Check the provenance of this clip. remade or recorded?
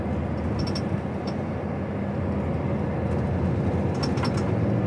recorded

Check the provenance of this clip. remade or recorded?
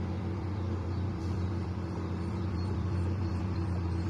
remade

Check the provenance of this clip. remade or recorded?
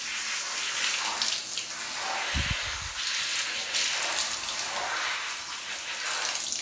recorded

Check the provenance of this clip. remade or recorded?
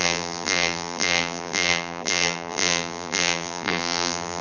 remade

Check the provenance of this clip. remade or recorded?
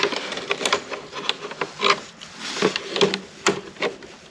recorded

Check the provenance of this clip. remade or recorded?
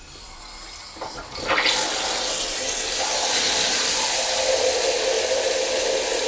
recorded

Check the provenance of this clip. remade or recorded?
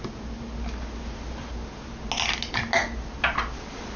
recorded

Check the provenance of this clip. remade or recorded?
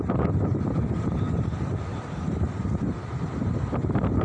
remade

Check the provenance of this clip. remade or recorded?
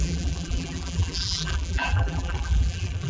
remade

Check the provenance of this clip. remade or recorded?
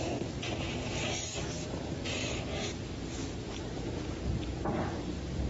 recorded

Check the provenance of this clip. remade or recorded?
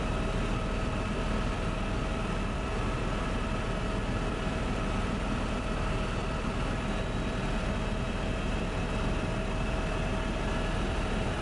remade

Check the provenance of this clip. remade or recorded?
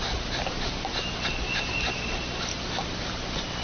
recorded